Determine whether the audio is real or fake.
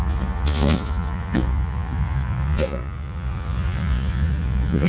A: fake